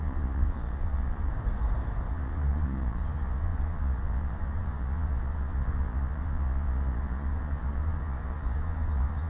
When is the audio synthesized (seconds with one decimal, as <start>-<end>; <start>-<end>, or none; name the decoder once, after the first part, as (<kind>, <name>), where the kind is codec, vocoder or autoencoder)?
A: 0.0-1.3 (vocoder, Vocos); 2.1-9.3

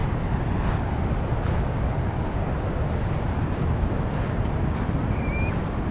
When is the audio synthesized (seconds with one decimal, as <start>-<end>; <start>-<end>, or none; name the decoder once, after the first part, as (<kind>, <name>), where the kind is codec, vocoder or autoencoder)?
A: none

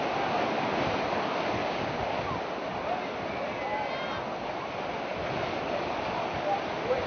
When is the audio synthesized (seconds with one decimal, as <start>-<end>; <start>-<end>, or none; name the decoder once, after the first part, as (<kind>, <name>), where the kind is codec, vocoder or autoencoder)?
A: 1.6-2.1 (codec, DAC)